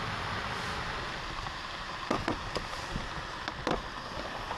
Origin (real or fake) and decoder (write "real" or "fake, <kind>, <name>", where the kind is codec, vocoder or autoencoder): real